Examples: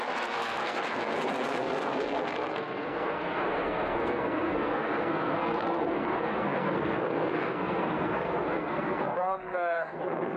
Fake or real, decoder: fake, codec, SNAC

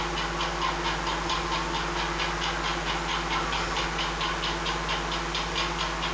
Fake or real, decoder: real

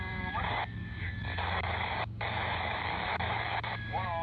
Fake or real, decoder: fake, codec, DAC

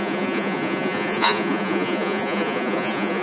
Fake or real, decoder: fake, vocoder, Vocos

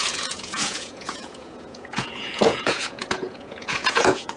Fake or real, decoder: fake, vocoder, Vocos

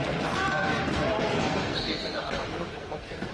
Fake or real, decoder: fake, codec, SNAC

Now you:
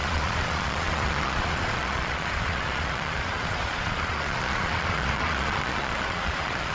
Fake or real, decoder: fake, vocoder, Vocos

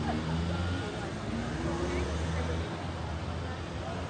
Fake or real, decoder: real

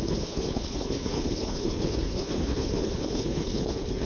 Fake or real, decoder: fake, codec, HILCodec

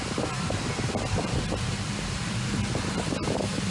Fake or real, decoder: real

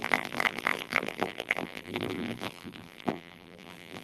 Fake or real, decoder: fake, vocoder, BigVGAN v2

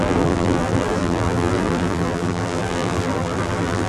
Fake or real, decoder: fake, vocoder, BigVGAN v2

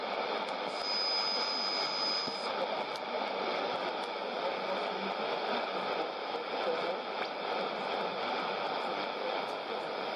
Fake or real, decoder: real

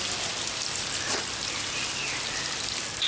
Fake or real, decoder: real